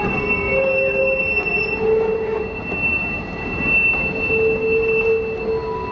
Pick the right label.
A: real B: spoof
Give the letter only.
A